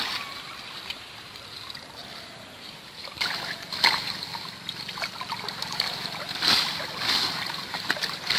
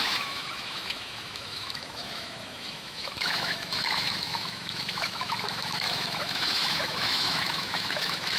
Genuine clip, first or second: first